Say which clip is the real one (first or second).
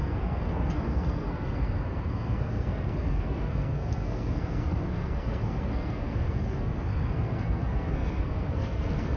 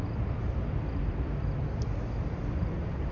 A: second